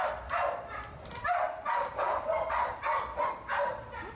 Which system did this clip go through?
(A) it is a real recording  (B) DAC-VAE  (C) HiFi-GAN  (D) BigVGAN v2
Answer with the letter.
A